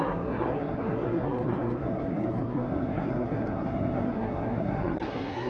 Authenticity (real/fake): fake